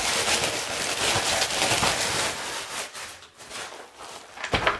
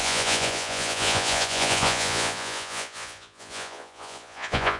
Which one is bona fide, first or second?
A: first